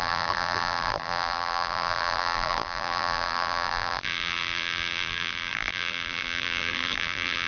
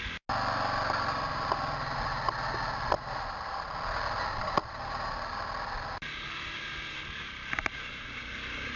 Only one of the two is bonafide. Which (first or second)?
second